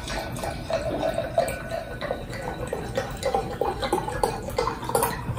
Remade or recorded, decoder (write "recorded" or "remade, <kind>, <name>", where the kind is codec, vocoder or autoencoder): recorded